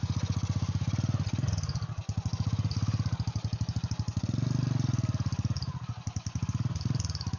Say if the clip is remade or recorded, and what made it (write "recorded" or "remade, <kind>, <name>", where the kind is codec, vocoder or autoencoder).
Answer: recorded